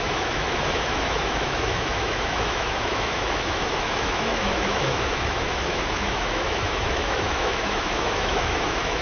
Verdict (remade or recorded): remade